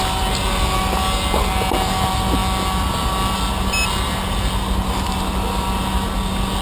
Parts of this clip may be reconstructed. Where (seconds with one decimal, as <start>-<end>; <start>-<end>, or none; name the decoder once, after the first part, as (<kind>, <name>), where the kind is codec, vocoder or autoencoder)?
none